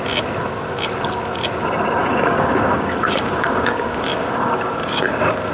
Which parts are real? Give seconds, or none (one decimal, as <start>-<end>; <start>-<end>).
0.0-2.0